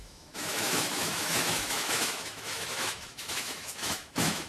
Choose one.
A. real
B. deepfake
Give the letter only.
B